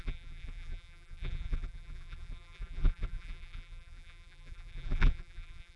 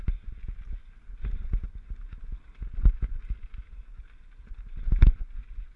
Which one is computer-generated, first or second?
first